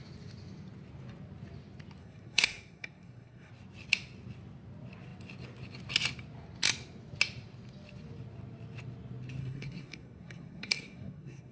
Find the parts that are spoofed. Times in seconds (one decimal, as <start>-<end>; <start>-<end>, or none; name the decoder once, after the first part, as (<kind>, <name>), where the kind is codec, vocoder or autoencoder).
2.0-3.5 (codec, SNAC); 9.4-11.5